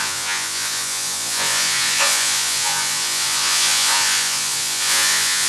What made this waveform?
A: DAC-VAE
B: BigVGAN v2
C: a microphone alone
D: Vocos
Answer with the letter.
D